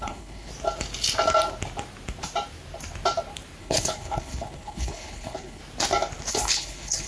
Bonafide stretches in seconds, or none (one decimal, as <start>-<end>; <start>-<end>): 0.5-3.6; 5.6-6.3